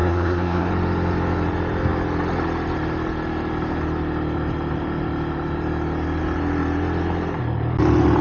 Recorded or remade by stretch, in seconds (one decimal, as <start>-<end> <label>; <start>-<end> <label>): 0.0-0.7 remade; 0.7-8.2 recorded